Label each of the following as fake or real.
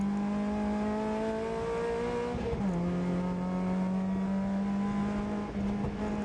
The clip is real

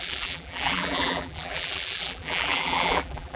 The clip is fake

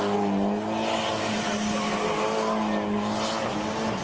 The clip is real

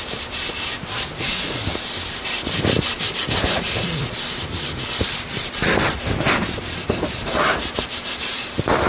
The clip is fake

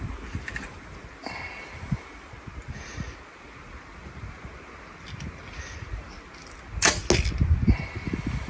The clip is real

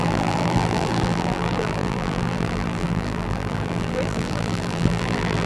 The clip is fake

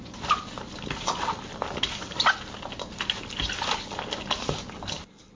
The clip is real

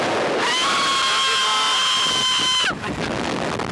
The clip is real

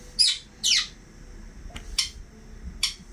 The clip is real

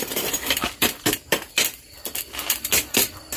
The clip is fake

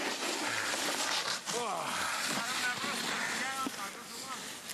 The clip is real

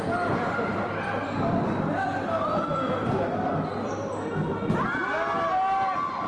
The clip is real